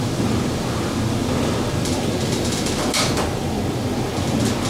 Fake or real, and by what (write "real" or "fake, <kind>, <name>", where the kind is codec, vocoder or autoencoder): real